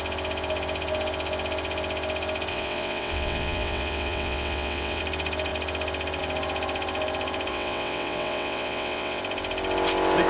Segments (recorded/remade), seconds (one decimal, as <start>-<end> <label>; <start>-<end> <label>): 0.0-2.5 recorded; 2.5-5.0 remade; 5.0-7.5 recorded; 7.5-9.2 remade; 9.2-10.3 recorded

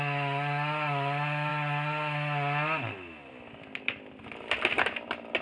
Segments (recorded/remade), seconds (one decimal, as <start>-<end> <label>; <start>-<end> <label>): 0.0-5.4 recorded